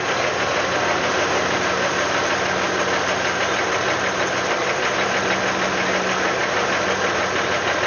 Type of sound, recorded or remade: recorded